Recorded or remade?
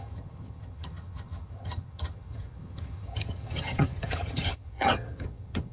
remade